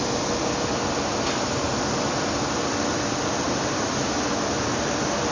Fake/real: real